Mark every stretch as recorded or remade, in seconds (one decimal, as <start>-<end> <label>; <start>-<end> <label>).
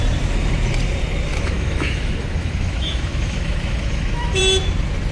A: 0.0-1.3 recorded; 1.3-4.4 remade; 4.4-5.1 recorded